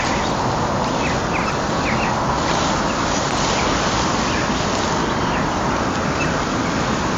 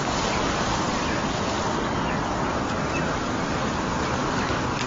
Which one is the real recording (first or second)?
first